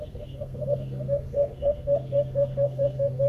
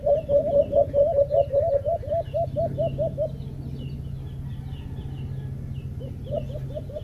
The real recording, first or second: second